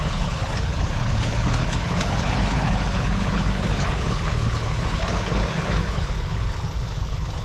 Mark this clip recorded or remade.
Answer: remade